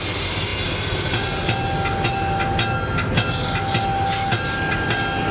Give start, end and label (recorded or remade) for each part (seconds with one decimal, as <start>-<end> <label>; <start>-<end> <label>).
0.0-5.3 recorded